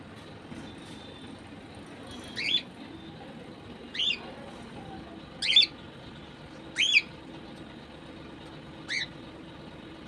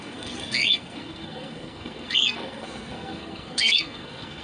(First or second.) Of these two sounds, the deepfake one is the second